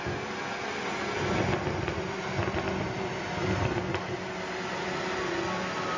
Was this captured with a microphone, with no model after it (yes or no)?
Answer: yes